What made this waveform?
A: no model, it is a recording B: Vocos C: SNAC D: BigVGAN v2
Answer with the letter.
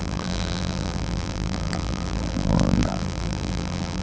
D